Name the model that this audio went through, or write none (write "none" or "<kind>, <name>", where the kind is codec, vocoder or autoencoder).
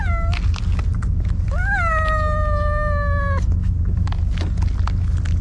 none